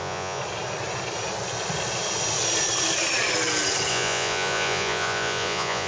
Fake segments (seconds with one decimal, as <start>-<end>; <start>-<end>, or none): 0.0-0.4; 3.9-5.9